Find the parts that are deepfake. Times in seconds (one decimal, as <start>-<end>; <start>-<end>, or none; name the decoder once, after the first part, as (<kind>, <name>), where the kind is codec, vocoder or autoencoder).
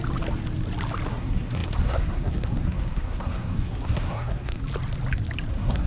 1.1-4.6 (codec, SNAC); 5.5-5.9